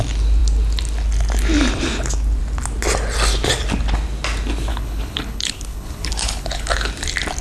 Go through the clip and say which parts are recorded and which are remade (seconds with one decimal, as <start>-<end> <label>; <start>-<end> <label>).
0.0-4.7 recorded; 4.7-6.9 remade; 6.9-7.4 recorded